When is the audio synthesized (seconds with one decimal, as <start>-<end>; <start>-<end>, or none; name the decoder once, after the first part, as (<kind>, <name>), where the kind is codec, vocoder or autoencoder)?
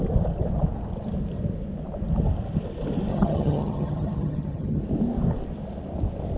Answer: 3.1-4.8 (vocoder, HiFi-GAN)